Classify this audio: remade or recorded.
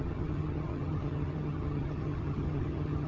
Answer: remade